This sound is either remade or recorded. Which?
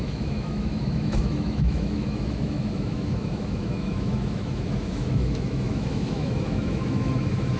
remade